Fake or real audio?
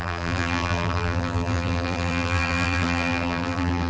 fake